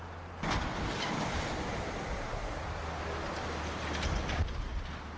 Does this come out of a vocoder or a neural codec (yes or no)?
no